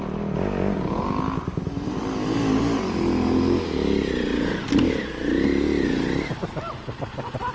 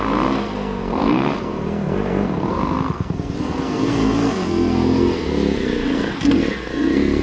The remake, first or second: second